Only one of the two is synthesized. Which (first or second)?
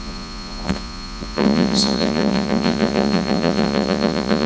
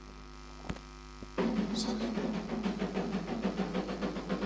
first